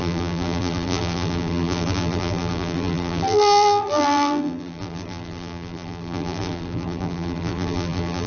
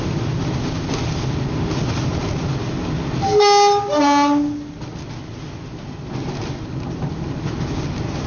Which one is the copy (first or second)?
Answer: first